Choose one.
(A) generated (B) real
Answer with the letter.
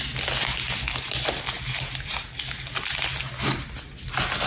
B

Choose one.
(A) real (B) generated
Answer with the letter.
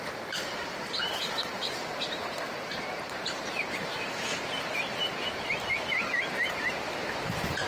B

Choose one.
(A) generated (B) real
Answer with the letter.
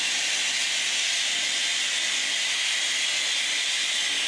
B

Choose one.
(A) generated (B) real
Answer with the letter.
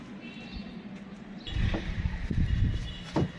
A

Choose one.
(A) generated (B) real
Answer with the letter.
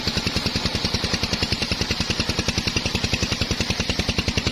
A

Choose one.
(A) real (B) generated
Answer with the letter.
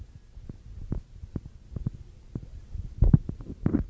A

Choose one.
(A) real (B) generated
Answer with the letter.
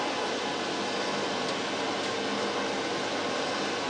A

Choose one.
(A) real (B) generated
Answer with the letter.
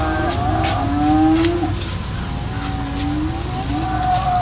A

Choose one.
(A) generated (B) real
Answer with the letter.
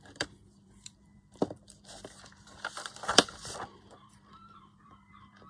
A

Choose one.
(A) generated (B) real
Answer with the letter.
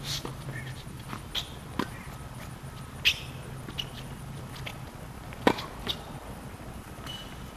B